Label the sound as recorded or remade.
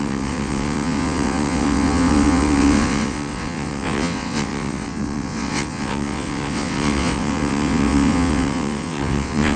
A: remade